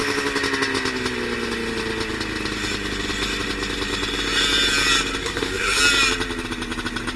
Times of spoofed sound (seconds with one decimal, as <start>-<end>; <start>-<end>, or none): 5.2-5.8

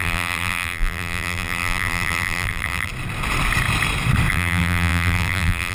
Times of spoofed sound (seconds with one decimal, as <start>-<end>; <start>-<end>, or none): 0.0-2.9; 4.3-5.7

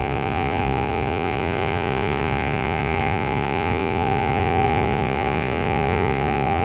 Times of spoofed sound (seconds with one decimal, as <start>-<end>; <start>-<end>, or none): 0.0-6.6

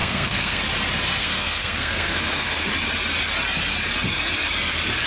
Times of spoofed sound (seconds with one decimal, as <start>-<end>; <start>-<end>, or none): 0.0-0.6; 1.2-2.7

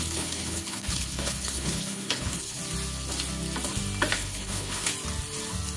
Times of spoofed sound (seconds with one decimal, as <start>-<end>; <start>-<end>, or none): 0.0-2.6; 4.1-4.9

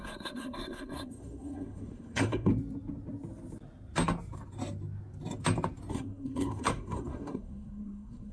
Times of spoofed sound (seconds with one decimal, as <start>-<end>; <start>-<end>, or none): 0.0-2.5; 5.9-8.3

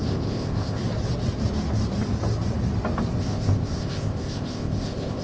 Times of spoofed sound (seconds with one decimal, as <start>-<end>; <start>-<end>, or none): 0.0-0.8; 3.2-5.2

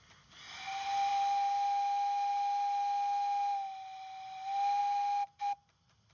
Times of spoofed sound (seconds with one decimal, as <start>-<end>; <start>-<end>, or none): none